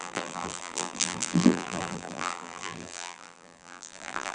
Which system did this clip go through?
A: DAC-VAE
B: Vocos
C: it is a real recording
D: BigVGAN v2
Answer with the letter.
D